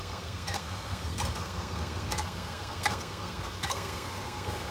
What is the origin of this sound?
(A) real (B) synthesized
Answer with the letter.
B